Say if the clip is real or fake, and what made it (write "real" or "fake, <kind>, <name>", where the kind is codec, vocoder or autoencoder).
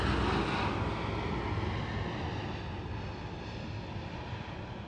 real